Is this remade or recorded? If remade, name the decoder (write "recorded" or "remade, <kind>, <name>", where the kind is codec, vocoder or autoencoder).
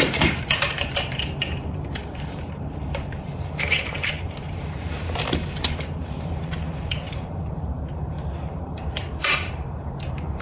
remade, vocoder, BigVGAN v2